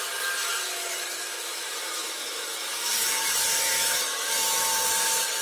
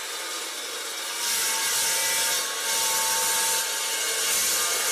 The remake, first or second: first